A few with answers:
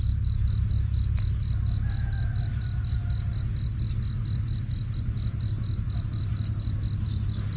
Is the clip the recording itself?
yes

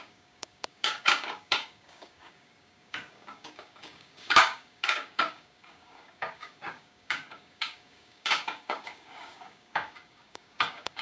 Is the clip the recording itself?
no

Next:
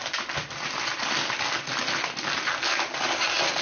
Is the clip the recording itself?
yes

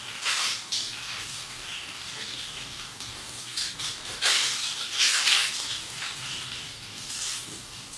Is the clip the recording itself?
no